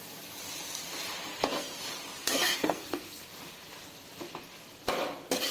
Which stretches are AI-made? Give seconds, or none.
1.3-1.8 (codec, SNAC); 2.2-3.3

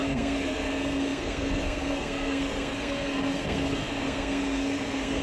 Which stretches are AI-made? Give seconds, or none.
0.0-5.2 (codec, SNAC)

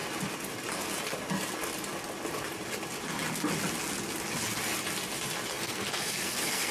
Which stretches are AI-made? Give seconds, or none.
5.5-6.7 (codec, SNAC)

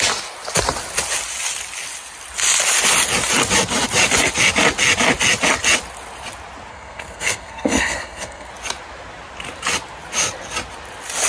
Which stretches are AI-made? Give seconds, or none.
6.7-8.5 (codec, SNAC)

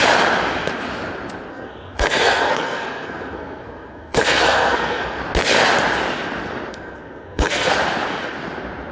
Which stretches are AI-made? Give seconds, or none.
1.5-5.2 (codec, SNAC); 6.7-7.7